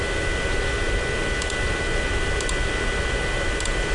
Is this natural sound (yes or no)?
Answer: yes